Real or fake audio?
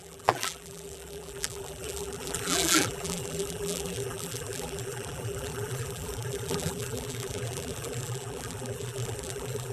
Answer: fake